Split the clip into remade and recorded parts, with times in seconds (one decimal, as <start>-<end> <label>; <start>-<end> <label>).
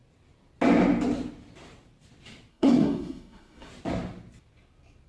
0.0-2.5 recorded; 2.5-3.7 remade; 3.7-5.1 recorded